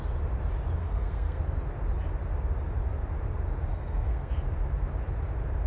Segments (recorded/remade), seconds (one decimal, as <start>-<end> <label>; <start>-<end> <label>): 0.0-0.8 recorded; 0.8-1.4 remade; 1.4-3.7 recorded; 3.7-4.3 remade; 4.3-5.7 recorded

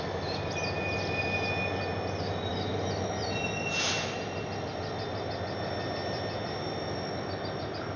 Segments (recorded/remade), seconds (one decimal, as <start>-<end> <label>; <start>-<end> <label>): 0.0-8.0 recorded

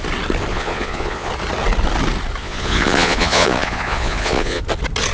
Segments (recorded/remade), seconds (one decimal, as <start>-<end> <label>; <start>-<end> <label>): 0.0-0.5 recorded; 0.5-1.3 remade; 1.3-2.4 recorded; 2.4-4.6 remade; 4.6-5.1 recorded

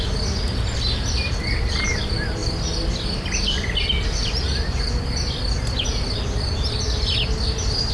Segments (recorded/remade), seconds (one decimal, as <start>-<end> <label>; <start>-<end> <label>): 0.0-7.9 recorded

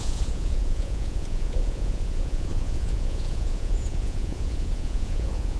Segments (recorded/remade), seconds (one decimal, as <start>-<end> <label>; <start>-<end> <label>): 0.0-5.6 remade

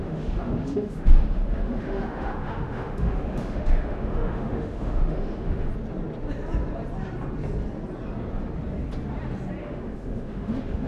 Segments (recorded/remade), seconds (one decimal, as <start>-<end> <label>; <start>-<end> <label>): 0.0-5.7 remade; 5.7-9.6 recorded; 9.6-10.9 remade

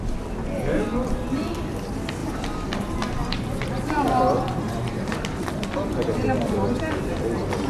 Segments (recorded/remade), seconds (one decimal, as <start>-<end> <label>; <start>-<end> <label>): 0.0-2.2 recorded; 2.2-6.8 remade; 6.8-7.7 recorded